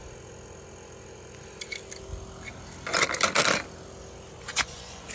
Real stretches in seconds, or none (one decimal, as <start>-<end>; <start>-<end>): 0.0-4.5